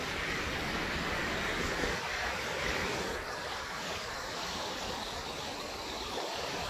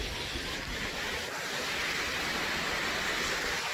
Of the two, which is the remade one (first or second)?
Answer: first